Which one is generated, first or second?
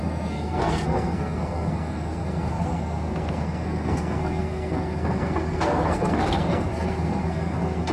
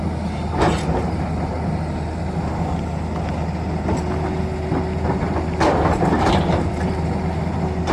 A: first